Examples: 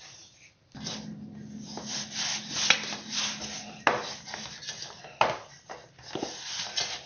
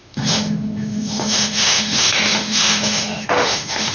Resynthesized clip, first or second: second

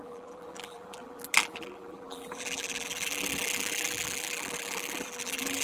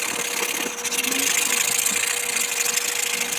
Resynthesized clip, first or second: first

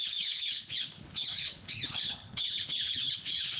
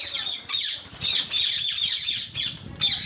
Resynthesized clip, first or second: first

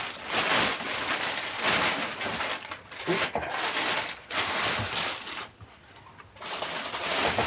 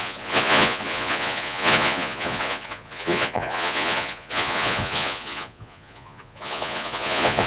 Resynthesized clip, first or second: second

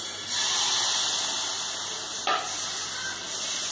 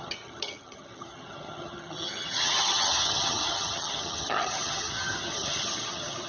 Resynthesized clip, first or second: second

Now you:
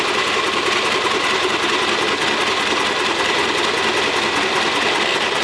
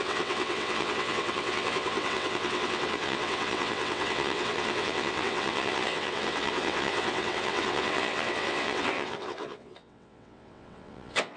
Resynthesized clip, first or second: second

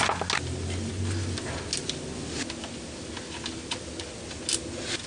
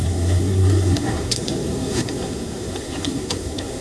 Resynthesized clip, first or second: second